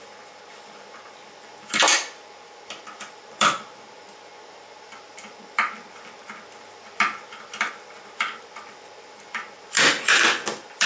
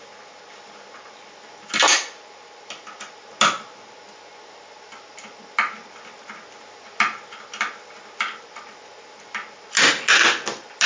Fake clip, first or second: first